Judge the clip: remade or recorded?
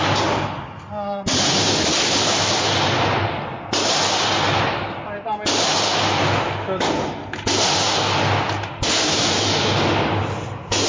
recorded